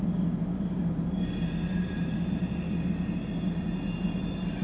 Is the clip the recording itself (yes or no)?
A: yes